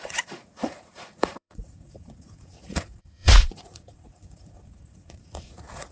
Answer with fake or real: fake